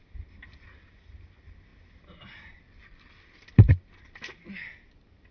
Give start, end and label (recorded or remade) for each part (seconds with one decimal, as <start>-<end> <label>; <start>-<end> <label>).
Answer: 0.0-1.7 recorded; 1.7-4.0 remade; 4.0-5.3 recorded